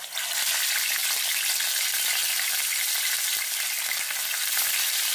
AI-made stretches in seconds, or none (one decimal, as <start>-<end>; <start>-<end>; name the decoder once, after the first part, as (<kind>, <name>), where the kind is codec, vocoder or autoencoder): none

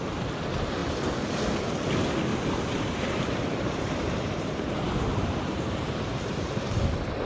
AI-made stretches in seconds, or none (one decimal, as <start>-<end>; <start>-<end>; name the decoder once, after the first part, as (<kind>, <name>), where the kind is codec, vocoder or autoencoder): 2.3-6.7 (vocoder, BigVGAN v2)

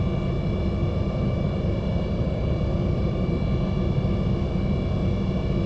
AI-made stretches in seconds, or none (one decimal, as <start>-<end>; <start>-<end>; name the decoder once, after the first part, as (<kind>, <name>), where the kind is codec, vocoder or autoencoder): 0.8-3.3 (vocoder, BigVGAN v2)

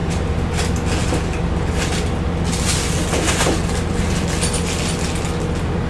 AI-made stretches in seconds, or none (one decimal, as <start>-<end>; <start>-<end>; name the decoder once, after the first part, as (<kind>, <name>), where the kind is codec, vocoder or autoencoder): 0.0-0.5 (vocoder, BigVGAN v2)

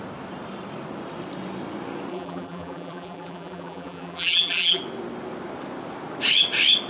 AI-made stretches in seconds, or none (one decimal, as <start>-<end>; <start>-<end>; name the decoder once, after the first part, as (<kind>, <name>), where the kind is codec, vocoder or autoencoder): 2.1-4.8 (vocoder, BigVGAN v2)

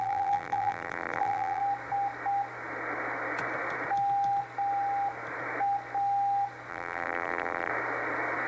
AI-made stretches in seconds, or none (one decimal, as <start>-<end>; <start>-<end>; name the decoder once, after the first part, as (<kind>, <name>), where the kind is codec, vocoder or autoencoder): 0.0-1.6 (vocoder, BigVGAN v2); 6.7-7.7

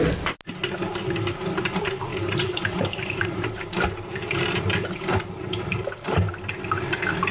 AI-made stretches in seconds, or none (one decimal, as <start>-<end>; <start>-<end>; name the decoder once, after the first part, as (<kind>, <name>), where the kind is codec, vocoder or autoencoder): 2.1-6.2 (vocoder, BigVGAN v2)